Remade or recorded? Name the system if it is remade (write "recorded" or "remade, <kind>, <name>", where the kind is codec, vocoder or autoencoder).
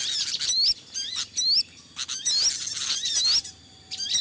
recorded